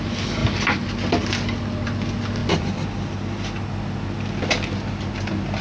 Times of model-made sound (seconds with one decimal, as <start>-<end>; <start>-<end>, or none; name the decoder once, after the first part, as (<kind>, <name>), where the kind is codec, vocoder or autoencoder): 0.4-1.1 (vocoder, BigVGAN v2); 2.4-3.2